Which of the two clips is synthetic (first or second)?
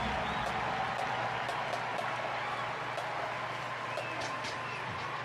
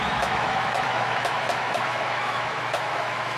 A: second